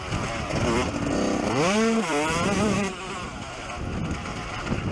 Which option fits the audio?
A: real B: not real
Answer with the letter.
B